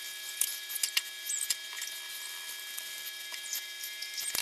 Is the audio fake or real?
real